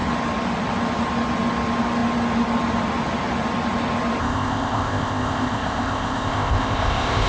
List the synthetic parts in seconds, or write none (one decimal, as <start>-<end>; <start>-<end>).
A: 4.2-7.3